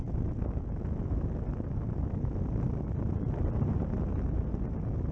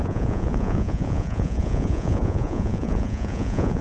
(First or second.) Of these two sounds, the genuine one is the first